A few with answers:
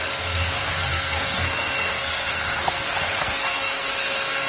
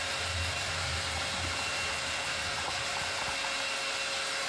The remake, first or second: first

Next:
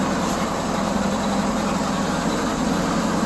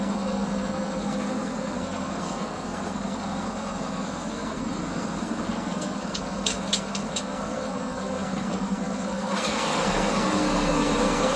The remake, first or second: second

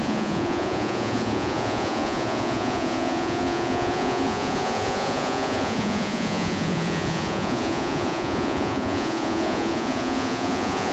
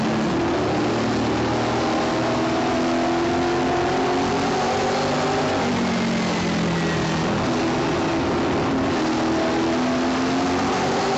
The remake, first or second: first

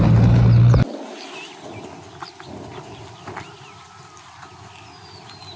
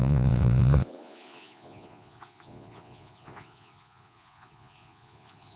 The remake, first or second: second